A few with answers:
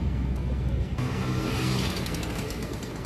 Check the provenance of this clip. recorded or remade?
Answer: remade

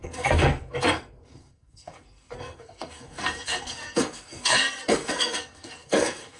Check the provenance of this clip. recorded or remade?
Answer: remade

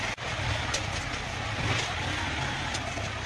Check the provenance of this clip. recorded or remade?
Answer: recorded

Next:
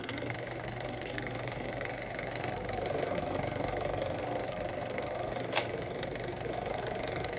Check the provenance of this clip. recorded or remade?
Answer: remade